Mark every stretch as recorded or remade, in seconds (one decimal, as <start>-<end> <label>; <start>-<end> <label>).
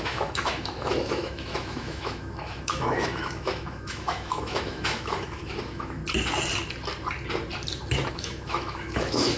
0.0-6.0 remade; 6.0-8.1 recorded; 8.1-9.4 remade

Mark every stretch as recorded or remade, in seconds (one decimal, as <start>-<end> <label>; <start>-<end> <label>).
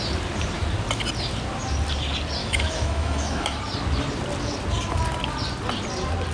0.0-2.4 recorded; 2.4-3.6 remade; 3.6-6.3 recorded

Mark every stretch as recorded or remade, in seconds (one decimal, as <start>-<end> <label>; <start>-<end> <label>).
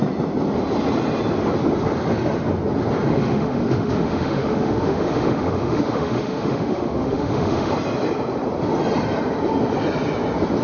0.0-3.1 recorded; 3.1-7.7 remade; 7.7-10.6 recorded